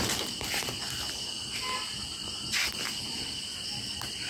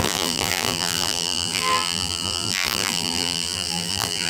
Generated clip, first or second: second